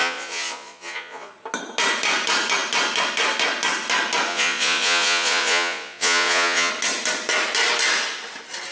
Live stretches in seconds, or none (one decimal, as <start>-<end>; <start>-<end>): 1.3-4.3; 6.7-8.7